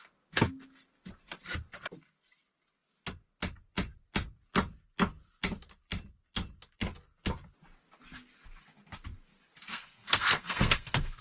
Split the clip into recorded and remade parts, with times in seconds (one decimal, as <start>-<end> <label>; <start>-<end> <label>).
0.0-9.7 recorded; 9.7-11.2 remade